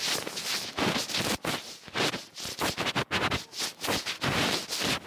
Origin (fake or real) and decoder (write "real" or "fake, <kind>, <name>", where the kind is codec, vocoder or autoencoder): real